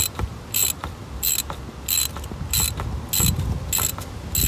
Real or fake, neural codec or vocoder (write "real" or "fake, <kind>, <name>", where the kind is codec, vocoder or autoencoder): real